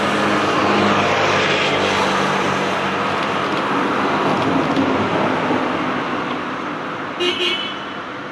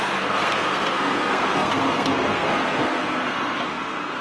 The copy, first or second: second